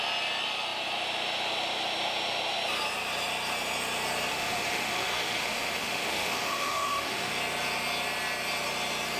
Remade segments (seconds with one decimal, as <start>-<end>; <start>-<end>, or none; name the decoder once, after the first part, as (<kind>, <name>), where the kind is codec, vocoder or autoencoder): 4.3-7.3 (autoencoder, DAC-VAE)